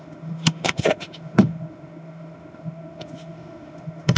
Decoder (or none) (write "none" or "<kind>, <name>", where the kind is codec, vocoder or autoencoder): autoencoder, DAC-VAE